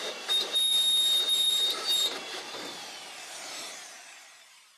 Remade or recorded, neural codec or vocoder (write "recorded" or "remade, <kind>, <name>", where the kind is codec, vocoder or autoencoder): remade, vocoder, BigVGAN v2